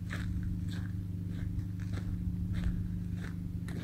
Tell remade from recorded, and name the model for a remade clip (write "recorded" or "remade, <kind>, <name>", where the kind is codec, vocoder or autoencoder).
recorded